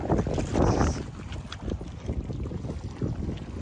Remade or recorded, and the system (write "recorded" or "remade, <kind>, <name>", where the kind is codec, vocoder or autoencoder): recorded